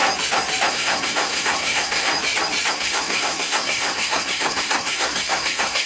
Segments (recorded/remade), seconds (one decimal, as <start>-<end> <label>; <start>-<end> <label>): 0.0-0.7 recorded; 0.7-2.1 remade; 2.1-2.7 recorded; 2.7-5.9 remade